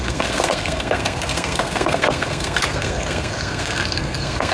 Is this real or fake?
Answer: fake